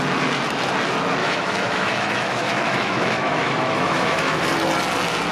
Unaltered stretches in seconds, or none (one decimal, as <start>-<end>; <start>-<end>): 0.0-1.2; 4.4-5.3